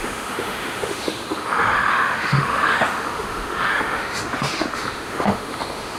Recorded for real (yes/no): no